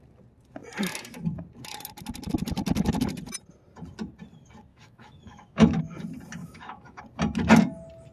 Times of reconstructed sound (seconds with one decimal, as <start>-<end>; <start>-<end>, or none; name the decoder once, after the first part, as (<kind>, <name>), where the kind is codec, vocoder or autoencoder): 4.7-5.8 (autoencoder, DAC-VAE); 6.4-7.0